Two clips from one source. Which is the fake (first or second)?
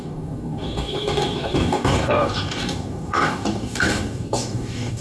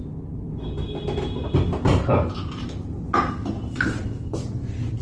first